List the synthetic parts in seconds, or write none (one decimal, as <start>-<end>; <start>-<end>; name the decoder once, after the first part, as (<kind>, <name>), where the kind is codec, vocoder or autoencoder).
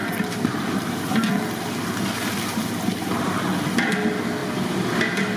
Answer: none